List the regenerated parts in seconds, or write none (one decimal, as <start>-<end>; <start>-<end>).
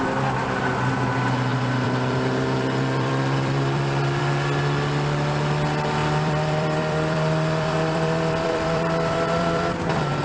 1.5-4.2; 6.0-10.2